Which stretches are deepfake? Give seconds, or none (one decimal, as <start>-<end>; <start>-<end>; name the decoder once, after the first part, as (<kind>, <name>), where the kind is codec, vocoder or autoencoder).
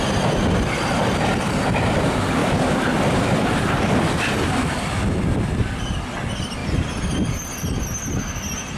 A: 2.4-5.7 (vocoder, BigVGAN v2); 6.6-7.3